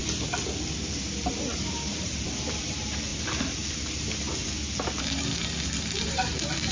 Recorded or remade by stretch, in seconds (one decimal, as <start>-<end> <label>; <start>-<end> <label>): 0.0-1.3 recorded; 1.3-3.1 remade; 3.1-6.0 recorded; 6.0-6.7 remade